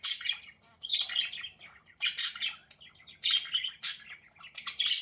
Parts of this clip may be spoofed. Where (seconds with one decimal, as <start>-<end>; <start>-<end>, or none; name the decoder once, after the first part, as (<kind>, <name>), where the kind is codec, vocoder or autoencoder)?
none

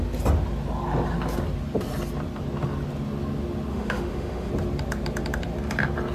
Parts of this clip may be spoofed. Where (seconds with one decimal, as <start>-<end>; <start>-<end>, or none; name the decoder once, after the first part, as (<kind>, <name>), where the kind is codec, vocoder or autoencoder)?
3.7-4.5 (autoencoder, DAC-VAE)

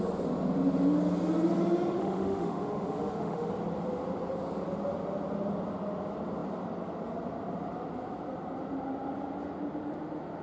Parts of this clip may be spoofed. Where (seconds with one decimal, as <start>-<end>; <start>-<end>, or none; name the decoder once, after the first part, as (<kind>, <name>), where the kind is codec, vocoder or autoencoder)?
2.0-3.5 (autoencoder, DAC-VAE)

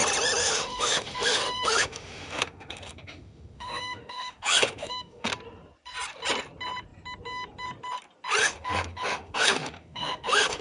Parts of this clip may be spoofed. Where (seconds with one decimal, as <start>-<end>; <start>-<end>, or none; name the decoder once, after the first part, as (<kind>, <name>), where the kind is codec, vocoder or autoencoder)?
0.4-5.3 (autoencoder, DAC-VAE); 8.4-10.6

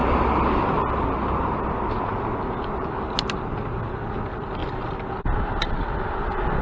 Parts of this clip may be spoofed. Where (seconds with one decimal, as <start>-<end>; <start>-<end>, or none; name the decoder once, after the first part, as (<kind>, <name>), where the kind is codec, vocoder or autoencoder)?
none

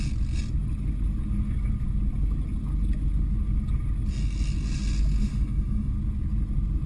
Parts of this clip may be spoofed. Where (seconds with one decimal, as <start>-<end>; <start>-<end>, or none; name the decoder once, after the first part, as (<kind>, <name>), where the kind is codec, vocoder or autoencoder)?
5.2-5.9 (autoencoder, DAC-VAE)

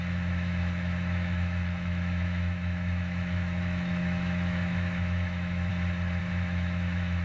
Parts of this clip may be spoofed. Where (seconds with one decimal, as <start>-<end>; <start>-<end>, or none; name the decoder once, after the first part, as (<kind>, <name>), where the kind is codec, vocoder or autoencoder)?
0.0-5.7 (autoencoder, DAC-VAE); 6.2-7.2